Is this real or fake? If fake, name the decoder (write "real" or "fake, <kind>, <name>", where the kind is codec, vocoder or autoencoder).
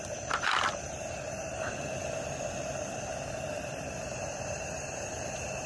fake, vocoder, BigVGAN v2